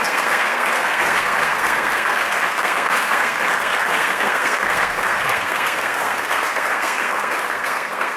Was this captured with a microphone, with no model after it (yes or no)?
no